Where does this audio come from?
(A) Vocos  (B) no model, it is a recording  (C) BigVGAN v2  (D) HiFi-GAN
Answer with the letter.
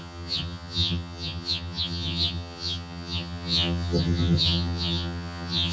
D